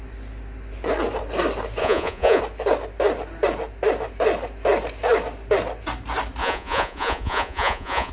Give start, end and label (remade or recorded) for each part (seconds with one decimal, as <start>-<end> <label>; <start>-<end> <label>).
0.0-1.8 recorded; 1.8-2.4 remade; 2.4-6.4 recorded; 6.4-8.1 remade

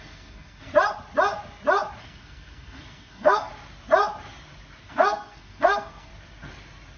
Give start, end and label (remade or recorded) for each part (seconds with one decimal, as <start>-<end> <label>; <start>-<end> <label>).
0.0-0.7 remade; 0.7-2.0 recorded; 2.0-3.5 remade; 3.5-4.8 recorded; 4.8-6.1 remade; 6.1-7.0 recorded

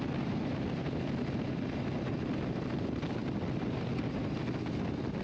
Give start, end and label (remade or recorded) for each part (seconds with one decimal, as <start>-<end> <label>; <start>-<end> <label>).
0.0-3.2 recorded; 3.2-4.1 remade; 4.1-5.2 recorded

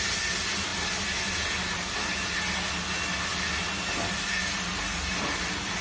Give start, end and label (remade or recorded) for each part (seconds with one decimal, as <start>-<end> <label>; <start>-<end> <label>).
0.0-5.8 recorded

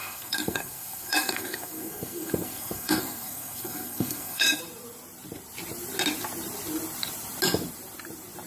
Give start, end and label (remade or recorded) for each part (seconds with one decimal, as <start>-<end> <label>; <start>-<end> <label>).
0.0-4.6 remade; 4.6-8.5 recorded